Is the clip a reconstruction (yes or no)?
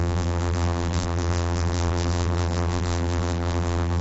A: yes